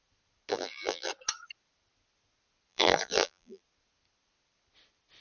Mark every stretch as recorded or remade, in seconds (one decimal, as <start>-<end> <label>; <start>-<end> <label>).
0.0-0.5 recorded; 0.5-1.1 remade; 1.1-2.7 recorded; 2.7-3.6 remade; 3.6-5.2 recorded